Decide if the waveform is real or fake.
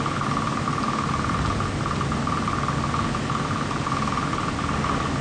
real